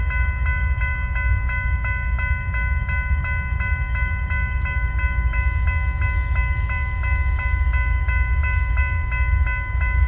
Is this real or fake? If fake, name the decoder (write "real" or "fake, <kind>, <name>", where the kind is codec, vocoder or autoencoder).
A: real